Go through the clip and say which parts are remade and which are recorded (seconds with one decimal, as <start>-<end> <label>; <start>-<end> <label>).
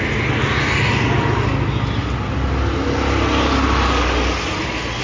0.0-5.0 recorded